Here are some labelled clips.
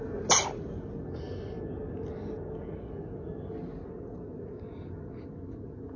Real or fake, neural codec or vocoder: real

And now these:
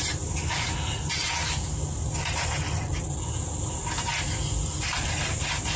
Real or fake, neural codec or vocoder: real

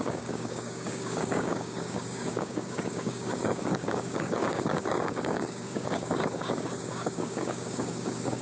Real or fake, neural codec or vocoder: fake, codec, DAC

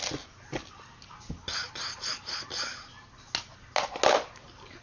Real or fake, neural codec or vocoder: real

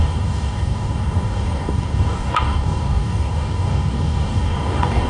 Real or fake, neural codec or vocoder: fake, codec, DAC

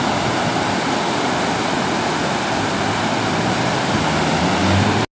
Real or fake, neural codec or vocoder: real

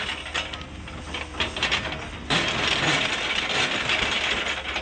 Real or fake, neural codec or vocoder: real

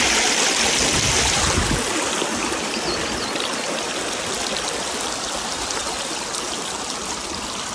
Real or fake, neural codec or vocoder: real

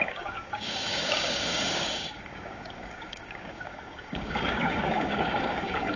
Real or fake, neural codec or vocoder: fake, codec, DAC